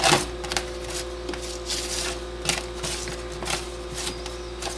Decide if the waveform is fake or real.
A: real